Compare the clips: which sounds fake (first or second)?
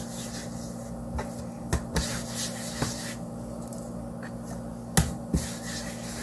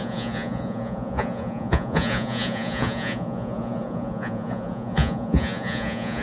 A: second